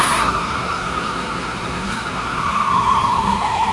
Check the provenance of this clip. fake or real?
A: fake